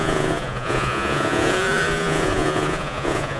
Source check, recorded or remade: remade